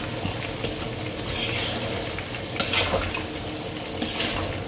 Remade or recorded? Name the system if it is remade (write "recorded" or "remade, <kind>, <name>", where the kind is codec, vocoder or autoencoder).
recorded